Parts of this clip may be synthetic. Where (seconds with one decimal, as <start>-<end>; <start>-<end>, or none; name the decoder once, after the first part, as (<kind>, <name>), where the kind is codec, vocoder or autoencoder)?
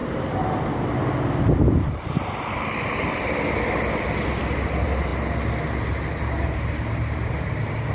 2.1-5.1 (vocoder, BigVGAN v2); 6.9-7.9